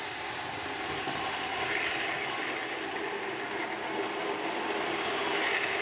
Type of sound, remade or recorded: recorded